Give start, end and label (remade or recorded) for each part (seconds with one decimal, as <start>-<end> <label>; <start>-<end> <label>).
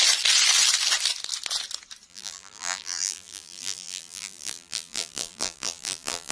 0.0-2.1 recorded; 2.1-6.3 remade